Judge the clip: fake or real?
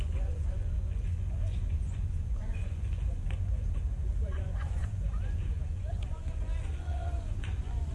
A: fake